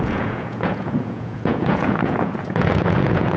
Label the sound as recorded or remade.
remade